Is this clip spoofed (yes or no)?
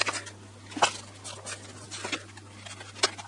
no